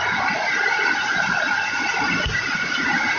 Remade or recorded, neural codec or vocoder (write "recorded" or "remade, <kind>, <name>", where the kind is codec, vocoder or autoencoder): recorded